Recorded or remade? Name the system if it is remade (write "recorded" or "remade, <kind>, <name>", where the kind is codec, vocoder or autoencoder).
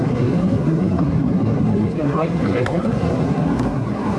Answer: remade, codec, SNAC